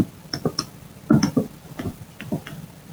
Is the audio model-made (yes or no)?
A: yes